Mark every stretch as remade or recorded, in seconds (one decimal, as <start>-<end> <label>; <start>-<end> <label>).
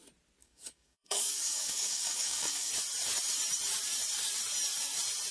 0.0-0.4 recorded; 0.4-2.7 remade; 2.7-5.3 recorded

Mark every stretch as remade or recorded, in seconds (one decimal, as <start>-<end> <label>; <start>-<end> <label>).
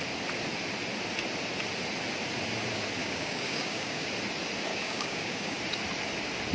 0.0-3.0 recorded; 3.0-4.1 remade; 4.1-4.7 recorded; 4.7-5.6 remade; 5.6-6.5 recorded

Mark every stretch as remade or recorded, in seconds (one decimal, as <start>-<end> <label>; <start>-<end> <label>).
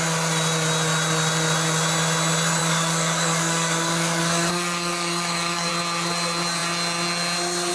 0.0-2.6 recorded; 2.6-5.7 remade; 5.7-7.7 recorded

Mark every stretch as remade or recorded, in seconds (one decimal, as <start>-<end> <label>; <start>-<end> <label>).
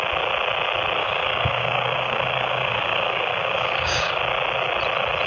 0.0-1.0 recorded; 1.0-4.2 remade; 4.2-5.3 recorded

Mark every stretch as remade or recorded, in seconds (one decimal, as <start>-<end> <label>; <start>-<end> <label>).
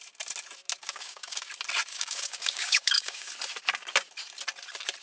0.0-0.8 recorded; 0.8-1.5 remade; 1.5-1.9 recorded; 1.9-3.3 remade; 3.3-5.0 recorded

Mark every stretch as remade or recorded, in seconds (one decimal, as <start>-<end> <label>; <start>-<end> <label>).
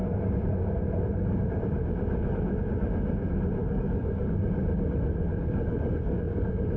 0.0-3.6 recorded; 3.6-4.4 remade; 4.4-5.3 recorded; 5.3-6.8 remade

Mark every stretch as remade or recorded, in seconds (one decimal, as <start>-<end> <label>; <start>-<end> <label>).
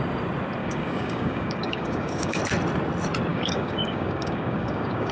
0.0-0.6 recorded; 0.6-2.4 remade; 2.4-3.3 recorded; 3.3-5.1 remade